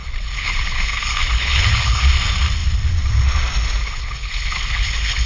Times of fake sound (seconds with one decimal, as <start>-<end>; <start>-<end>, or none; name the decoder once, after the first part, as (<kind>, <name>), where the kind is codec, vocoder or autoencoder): 0.0-2.1 (codec, HILCodec); 3.8-5.3